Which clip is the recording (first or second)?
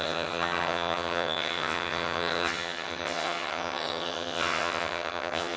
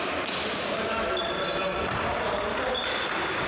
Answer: second